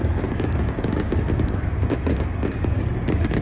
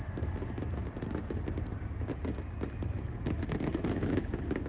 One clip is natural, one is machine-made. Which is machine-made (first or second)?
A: first